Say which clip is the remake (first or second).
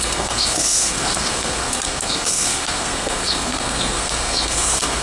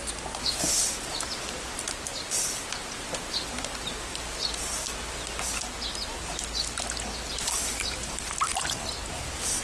first